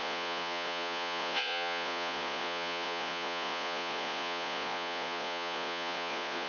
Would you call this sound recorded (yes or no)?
no